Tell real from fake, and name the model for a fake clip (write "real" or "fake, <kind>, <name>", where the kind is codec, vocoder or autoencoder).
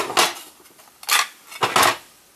real